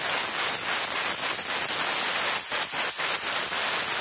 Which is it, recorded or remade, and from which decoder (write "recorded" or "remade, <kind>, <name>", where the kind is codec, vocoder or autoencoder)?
recorded